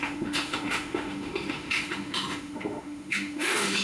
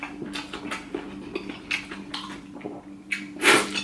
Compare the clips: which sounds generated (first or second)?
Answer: first